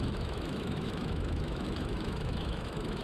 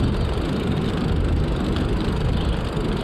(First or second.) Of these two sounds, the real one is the second